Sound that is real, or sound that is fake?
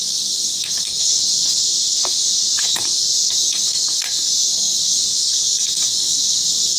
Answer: fake